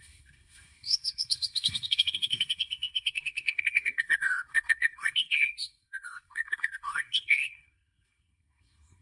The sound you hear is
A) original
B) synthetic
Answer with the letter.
B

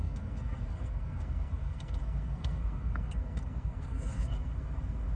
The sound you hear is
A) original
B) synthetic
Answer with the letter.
B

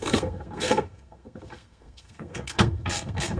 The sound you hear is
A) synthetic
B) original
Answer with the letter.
A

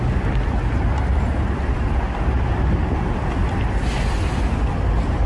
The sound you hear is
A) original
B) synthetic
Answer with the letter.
A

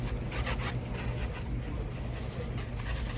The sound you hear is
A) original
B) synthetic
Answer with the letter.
A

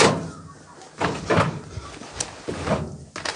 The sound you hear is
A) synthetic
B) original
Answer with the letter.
B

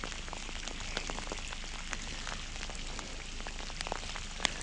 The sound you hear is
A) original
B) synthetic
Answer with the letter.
A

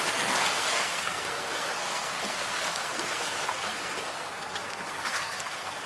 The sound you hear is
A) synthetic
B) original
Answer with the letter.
A